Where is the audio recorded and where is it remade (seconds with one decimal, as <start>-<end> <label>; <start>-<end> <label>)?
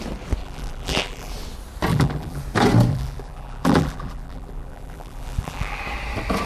0.0-0.4 recorded; 0.4-1.3 remade; 1.3-1.9 recorded; 1.9-2.4 remade; 2.4-2.9 recorded; 2.9-5.8 remade; 5.8-6.5 recorded